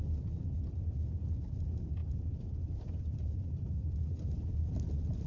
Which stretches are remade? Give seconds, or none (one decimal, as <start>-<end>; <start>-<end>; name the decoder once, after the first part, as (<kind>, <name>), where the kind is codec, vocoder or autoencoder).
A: 2.0-4.5 (vocoder, BigVGAN v2)